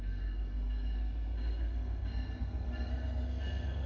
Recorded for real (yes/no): no